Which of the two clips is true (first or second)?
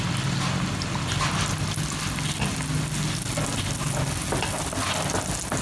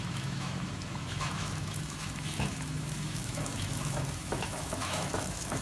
first